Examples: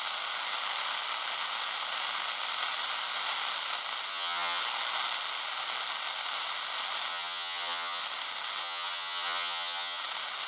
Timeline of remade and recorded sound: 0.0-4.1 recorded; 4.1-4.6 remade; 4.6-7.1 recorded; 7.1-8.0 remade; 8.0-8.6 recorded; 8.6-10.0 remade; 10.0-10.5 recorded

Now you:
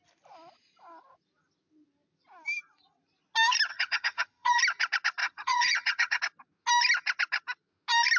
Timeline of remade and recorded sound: 0.0-3.7 recorded; 3.7-4.6 remade; 4.6-5.2 recorded; 5.2-6.2 remade; 6.2-8.2 recorded

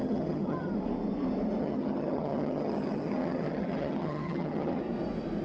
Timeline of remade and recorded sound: 0.0-0.7 remade; 0.7-1.6 recorded; 1.6-4.8 remade; 4.8-5.4 recorded

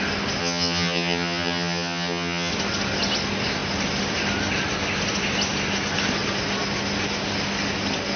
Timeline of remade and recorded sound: 0.0-0.4 recorded; 0.4-2.5 remade; 2.5-8.2 recorded

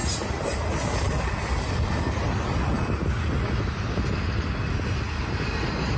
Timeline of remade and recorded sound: 0.0-6.0 recorded